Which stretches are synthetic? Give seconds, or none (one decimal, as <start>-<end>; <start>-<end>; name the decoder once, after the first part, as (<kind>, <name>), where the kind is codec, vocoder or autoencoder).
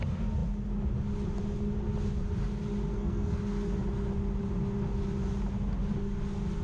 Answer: 2.9-3.4 (codec, SNAC)